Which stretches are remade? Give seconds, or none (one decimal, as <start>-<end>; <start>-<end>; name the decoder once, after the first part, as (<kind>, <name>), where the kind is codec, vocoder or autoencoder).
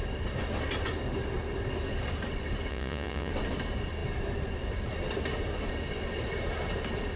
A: 2.7-3.3 (vocoder, Vocos)